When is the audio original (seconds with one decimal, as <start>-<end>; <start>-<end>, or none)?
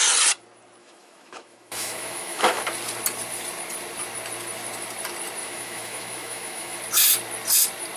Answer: 0.0-0.8; 2.6-5.4; 6.8-8.0